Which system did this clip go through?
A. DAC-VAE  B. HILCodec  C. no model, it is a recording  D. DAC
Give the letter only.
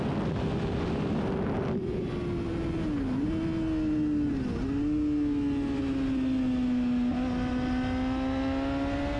C